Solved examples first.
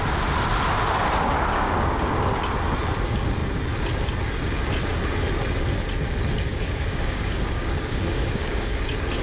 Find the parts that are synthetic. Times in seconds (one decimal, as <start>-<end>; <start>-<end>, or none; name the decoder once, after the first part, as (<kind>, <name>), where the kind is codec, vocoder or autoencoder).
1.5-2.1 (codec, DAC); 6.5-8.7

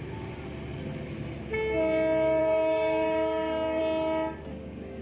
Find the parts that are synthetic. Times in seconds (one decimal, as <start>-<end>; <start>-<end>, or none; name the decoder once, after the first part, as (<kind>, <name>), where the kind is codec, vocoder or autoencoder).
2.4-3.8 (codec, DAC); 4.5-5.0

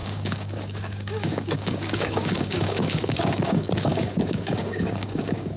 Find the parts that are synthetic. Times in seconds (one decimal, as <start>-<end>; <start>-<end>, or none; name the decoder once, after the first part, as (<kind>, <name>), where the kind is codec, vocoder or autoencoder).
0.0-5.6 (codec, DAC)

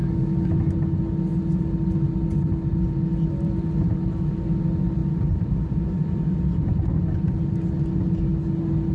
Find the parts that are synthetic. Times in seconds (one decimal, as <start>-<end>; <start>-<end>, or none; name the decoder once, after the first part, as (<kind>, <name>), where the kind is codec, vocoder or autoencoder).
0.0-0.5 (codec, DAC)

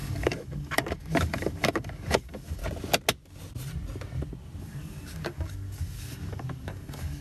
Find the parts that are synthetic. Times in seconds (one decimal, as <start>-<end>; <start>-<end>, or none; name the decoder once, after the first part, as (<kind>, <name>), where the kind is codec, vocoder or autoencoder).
0.0-2.6 (codec, DAC); 4.6-7.2

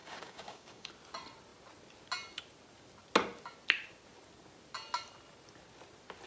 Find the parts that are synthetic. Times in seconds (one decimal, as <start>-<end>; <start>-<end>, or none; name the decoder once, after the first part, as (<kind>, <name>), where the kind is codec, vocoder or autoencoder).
0.0-0.9 (codec, DAC)

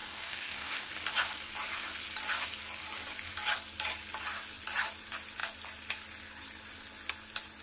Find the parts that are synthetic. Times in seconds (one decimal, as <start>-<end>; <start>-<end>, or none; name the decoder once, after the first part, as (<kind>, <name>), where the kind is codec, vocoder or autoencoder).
0.0-0.9 (codec, DAC)